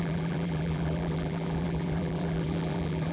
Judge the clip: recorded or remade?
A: remade